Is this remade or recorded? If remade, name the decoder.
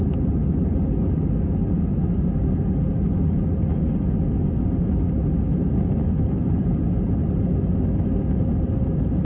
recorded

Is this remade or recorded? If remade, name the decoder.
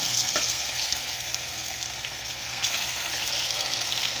remade, codec, SNAC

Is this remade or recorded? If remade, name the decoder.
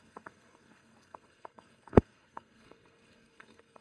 remade, codec, SNAC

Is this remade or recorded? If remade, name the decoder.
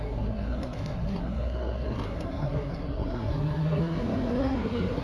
remade, codec, SNAC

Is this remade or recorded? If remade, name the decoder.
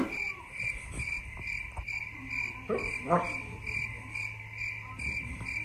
recorded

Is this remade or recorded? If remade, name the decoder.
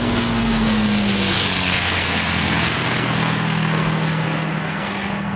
remade, codec, SNAC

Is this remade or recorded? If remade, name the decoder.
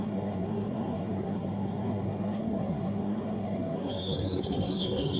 remade, codec, SNAC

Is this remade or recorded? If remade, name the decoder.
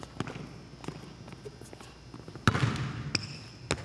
recorded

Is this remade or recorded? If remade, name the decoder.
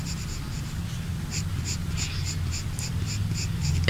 recorded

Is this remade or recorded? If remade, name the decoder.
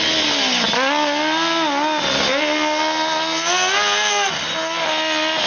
recorded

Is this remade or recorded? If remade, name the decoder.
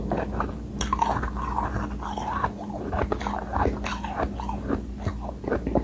recorded